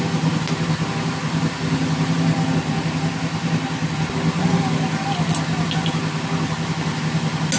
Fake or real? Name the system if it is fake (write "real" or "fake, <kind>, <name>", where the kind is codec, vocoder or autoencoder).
real